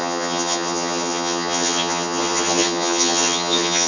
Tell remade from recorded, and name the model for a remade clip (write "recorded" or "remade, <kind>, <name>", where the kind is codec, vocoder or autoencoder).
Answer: remade, vocoder, HiFi-GAN